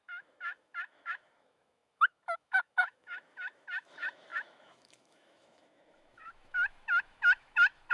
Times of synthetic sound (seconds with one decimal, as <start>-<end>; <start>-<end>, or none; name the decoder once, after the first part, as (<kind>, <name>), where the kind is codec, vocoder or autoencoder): 0.0-7.9 (autoencoder, DAC-VAE)